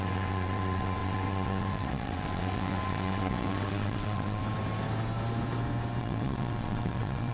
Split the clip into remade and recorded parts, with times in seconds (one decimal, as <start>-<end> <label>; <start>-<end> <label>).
0.0-4.4 remade; 4.4-6.0 recorded; 6.0-7.3 remade